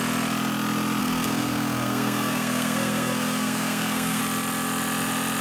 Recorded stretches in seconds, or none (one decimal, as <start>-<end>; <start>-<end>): 0.0-1.0; 4.2-5.4